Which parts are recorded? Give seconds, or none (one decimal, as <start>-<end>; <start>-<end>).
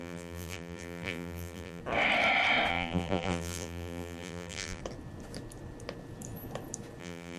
1.8-2.7; 4.8-7.0